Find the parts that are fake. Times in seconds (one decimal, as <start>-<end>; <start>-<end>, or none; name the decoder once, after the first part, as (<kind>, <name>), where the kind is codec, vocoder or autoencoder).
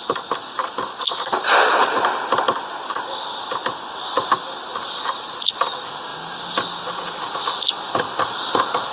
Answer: none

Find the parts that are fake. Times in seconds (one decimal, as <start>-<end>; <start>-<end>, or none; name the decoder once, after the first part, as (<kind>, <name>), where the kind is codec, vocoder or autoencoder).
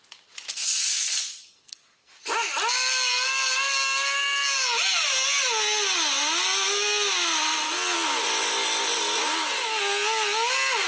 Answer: 0.5-2.1 (codec, SNAC)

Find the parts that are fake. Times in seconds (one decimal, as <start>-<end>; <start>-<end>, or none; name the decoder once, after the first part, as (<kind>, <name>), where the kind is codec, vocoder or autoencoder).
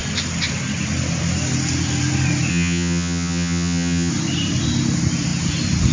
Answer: 2.5-4.1 (vocoder, HiFi-GAN)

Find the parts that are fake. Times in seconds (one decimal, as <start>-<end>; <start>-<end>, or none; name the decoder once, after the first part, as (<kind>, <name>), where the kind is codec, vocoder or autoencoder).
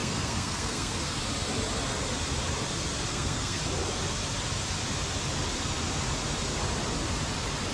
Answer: 0.0-1.2 (codec, SNAC); 3.1-3.6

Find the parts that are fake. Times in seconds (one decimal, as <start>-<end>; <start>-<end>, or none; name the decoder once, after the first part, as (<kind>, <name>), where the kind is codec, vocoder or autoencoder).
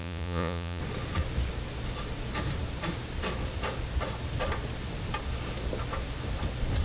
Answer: 0.0-0.8 (vocoder, Vocos)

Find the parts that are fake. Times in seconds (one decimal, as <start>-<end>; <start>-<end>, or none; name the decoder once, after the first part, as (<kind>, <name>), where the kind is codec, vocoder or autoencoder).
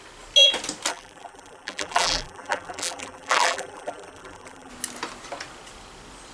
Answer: 0.9-4.7 (vocoder, BigVGAN v2)